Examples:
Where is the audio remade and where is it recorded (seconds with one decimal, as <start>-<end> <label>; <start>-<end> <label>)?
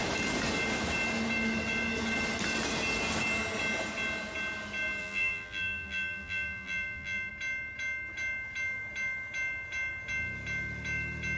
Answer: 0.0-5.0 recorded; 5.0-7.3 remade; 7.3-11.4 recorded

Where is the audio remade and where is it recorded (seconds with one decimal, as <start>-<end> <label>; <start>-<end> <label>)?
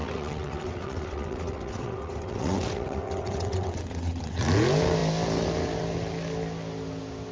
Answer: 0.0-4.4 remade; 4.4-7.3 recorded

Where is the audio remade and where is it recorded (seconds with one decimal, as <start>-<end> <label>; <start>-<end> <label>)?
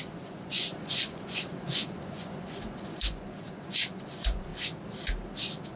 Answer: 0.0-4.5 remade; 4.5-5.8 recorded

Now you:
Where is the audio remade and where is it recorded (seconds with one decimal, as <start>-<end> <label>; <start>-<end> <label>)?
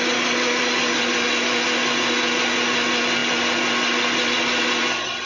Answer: 0.0-5.3 recorded